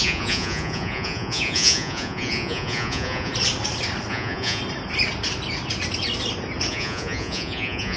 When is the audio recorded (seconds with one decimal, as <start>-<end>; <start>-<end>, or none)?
3.3-4.1; 4.6-6.7